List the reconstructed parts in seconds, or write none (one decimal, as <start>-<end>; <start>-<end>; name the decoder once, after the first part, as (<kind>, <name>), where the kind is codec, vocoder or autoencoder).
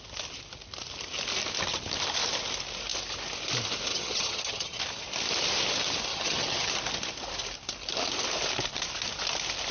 3.9-4.8 (vocoder, HiFi-GAN); 6.1-6.7